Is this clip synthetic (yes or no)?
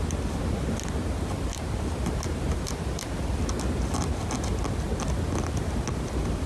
no